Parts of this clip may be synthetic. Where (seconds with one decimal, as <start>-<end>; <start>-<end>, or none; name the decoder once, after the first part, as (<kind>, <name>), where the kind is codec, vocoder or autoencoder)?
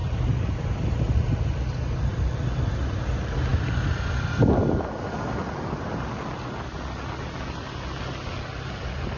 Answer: 0.0-1.4 (vocoder, BigVGAN v2); 2.1-2.8